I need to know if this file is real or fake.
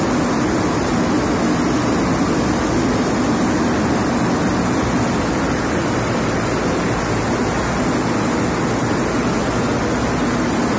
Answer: real